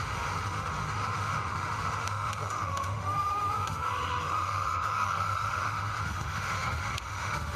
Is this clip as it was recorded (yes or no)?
no